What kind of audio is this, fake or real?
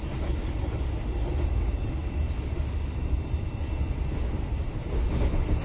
real